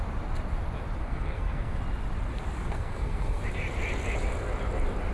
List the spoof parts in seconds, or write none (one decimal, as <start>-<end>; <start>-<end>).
1.0-1.8; 2.6-3.4

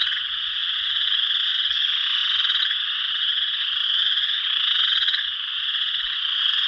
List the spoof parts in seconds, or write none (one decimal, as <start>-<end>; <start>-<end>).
0.0-6.7

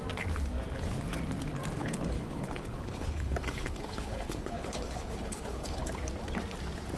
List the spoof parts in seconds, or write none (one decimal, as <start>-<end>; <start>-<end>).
1.8-6.0

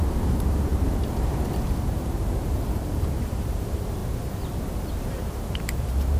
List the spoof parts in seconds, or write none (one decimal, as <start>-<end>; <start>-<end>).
0.0-4.0; 4.9-6.2

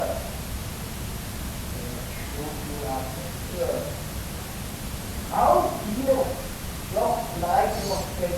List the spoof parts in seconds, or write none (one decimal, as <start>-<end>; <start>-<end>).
5.1-7.9